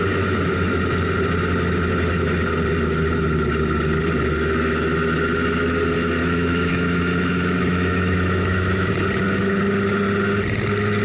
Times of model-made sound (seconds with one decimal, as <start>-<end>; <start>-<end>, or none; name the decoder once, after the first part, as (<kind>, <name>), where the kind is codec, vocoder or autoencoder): 6.2-8.9 (autoencoder, DAC-VAE)